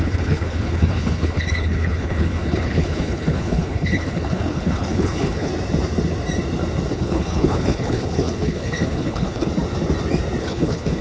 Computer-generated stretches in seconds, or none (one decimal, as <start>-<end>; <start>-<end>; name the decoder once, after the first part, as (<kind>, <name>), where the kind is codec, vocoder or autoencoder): 0.0-5.5 (codec, HILCodec); 6.9-9.5; 10.4-11.0